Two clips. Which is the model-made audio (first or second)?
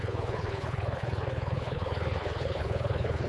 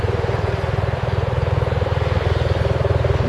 first